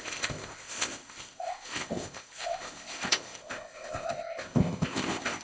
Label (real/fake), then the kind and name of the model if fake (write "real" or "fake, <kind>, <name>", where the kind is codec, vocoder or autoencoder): fake, codec, ZipCodec